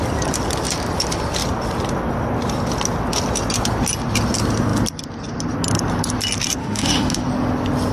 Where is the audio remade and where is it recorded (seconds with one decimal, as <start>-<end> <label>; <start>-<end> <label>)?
0.0-6.6 recorded; 6.6-7.2 remade; 7.2-7.9 recorded